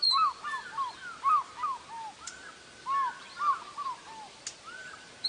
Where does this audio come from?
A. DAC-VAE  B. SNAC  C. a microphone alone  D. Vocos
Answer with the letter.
C